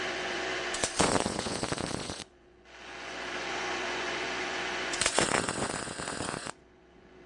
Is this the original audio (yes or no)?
no